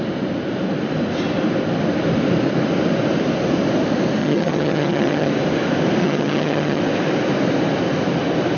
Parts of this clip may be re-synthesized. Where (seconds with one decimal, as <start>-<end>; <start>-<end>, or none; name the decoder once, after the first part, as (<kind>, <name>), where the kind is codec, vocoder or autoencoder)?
4.2-5.3 (vocoder, HiFi-GAN); 6.0-6.8